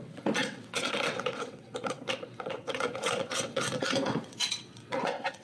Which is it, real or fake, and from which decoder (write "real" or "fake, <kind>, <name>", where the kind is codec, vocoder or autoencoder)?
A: fake, vocoder, WaveNeXt